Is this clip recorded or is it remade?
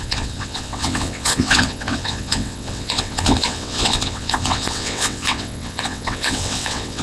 remade